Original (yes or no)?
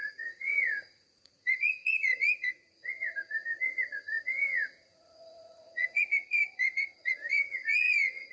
no